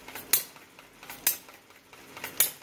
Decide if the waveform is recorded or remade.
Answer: recorded